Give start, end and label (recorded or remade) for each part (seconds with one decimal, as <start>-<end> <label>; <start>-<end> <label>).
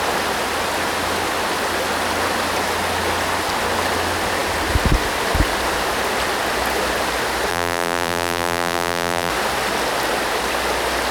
0.0-7.5 recorded; 7.5-9.3 remade; 9.3-11.1 recorded